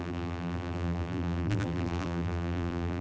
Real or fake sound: fake